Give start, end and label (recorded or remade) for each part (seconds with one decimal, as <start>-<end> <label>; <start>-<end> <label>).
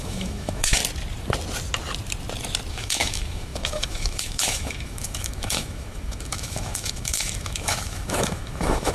0.0-0.8 remade; 0.8-2.7 recorded; 2.7-8.9 remade